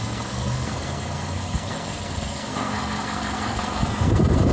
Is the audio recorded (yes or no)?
no